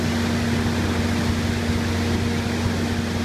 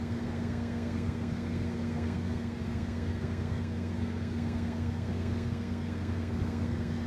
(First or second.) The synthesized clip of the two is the second